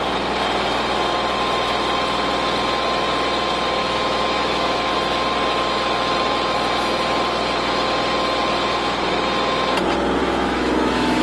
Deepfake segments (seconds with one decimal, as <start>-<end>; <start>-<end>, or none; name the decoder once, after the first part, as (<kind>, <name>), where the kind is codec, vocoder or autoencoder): 3.8-4.9 (autoencoder, DAC-VAE); 10.2-11.2

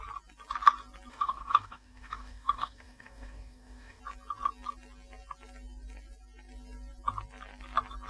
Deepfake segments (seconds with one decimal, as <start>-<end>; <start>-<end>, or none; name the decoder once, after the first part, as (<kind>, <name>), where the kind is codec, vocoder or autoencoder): 1.1-4.0 (codec, DAC)

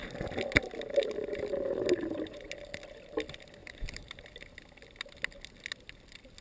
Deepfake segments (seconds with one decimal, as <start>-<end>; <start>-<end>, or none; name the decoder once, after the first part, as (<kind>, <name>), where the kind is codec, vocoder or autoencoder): 3.6-4.3 (vocoder, BigVGAN v2)

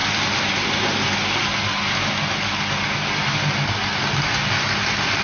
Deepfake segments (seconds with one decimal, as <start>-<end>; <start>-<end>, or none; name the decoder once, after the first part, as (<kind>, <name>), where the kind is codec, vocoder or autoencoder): none

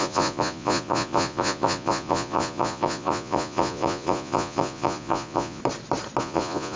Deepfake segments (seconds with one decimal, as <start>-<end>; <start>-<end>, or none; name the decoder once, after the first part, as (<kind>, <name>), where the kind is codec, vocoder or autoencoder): 0.0-5.6 (vocoder, Vocos); 6.2-6.8

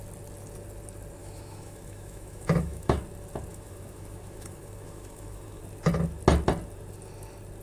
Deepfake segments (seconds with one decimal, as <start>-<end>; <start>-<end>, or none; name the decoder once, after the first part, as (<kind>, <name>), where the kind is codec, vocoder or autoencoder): 1.2-3.0 (autoencoder, DAC-VAE); 3.5-5.6

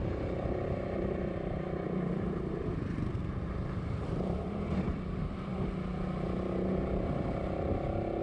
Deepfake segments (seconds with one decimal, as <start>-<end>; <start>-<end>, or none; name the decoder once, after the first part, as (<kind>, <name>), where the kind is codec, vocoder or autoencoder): 0.0-3.2 (vocoder, BigVGAN v2); 3.8-5.5